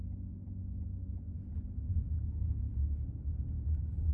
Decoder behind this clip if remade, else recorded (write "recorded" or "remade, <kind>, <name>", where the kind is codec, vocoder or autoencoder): recorded